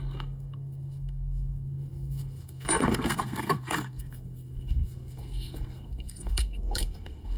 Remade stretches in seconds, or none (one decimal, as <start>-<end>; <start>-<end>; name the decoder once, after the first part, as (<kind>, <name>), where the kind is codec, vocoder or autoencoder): 0.0-7.4 (codec, SNAC)